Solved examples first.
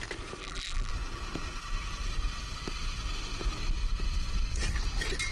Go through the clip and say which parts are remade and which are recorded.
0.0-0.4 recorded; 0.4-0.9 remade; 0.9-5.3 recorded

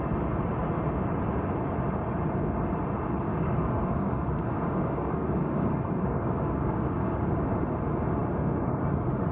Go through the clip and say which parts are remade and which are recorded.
0.0-3.3 recorded; 3.3-7.6 remade; 7.6-9.3 recorded

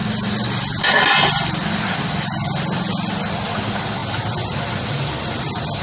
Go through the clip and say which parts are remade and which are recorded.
0.0-1.5 remade; 1.5-5.8 recorded

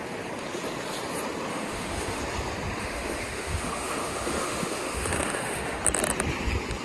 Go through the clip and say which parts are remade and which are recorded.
0.0-1.5 recorded; 1.5-2.2 remade; 2.2-2.8 recorded; 2.8-5.8 remade; 5.8-6.8 recorded